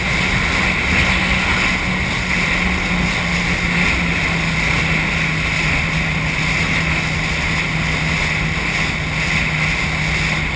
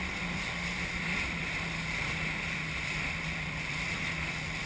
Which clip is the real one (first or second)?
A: first